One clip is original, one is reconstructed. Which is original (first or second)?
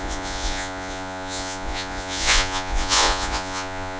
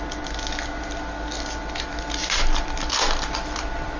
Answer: second